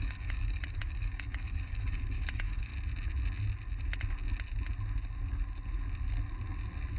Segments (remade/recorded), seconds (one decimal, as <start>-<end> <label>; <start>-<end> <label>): 0.0-2.7 remade; 2.7-7.0 recorded